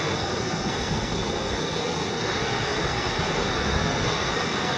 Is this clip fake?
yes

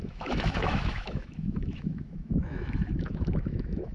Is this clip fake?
yes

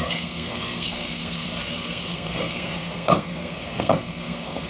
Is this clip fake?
yes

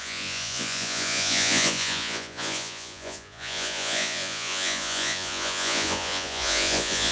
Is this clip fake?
yes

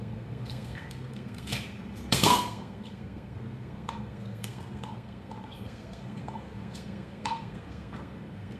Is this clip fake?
yes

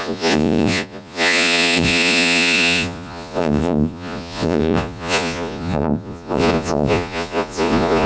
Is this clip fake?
yes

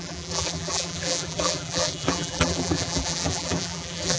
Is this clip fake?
yes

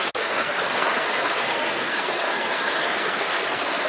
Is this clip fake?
yes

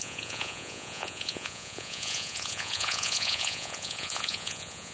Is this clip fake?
yes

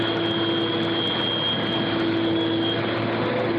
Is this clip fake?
no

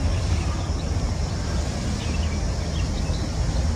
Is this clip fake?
no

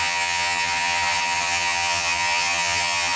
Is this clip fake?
yes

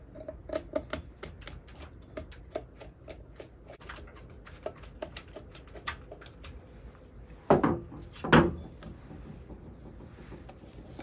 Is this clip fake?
no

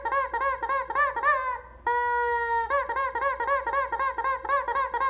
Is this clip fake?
no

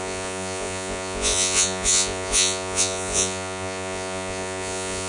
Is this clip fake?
yes